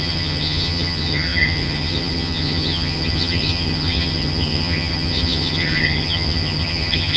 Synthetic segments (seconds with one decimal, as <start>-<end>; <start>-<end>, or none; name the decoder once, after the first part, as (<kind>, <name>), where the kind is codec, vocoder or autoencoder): 0.0-7.2 (vocoder, HiFi-GAN)